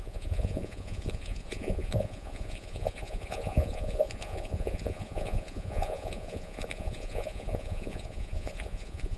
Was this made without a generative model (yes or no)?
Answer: no